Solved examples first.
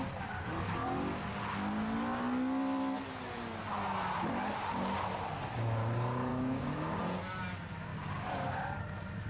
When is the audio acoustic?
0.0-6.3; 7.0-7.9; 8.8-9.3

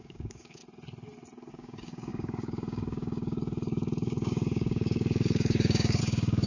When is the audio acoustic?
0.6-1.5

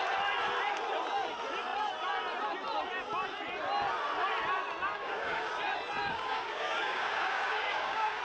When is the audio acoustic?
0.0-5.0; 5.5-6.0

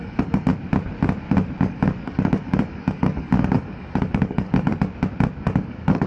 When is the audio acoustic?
0.5-1.6; 4.7-5.4

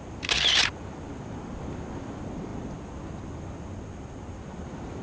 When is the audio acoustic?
0.0-5.0

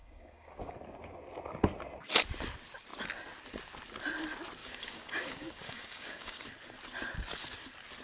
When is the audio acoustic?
0.7-4.6; 6.4-8.0

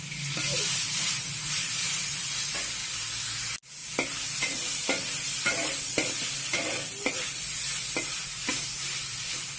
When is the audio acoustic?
0.0-9.6